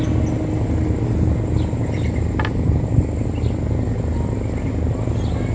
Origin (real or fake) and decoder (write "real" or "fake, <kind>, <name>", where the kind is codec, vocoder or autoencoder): real